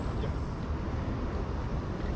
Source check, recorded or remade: recorded